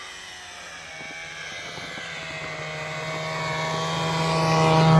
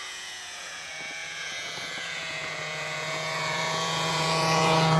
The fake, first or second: second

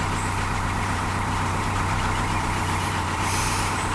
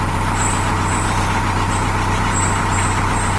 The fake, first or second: first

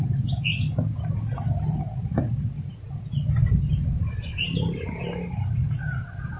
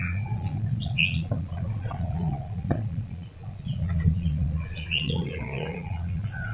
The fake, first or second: second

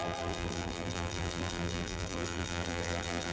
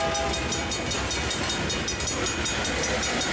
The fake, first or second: first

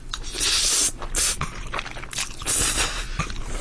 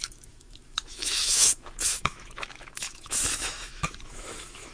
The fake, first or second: second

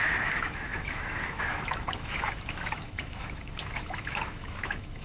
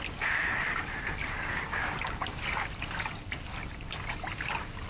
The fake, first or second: first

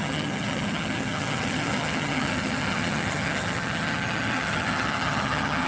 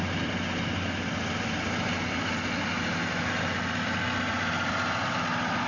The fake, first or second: first